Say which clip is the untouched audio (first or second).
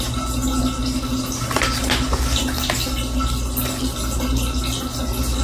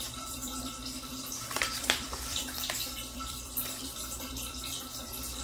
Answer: first